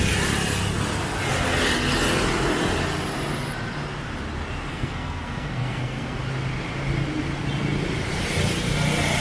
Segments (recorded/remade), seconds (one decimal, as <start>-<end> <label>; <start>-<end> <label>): 0.0-4.7 recorded; 4.7-6.2 remade; 6.2-9.2 recorded